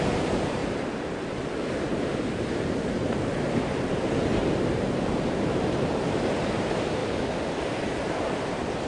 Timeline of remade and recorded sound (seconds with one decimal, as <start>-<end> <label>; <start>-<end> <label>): 0.0-0.6 remade; 0.6-1.8 recorded; 1.8-7.0 remade; 7.0-7.6 recorded; 7.6-8.9 remade